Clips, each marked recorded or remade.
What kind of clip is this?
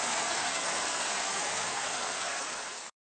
remade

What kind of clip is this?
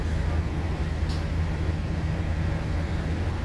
recorded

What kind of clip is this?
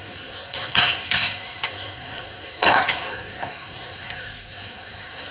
remade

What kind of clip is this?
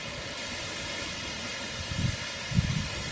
recorded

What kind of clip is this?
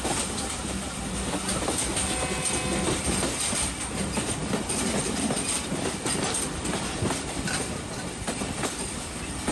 recorded